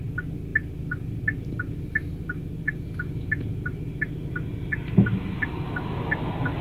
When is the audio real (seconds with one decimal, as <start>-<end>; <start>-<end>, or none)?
0.0-6.6